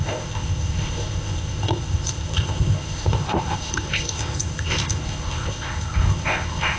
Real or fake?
fake